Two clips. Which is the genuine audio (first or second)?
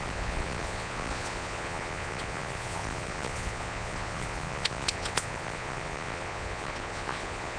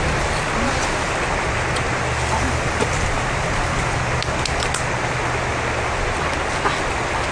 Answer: second